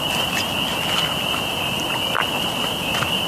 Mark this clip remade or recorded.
recorded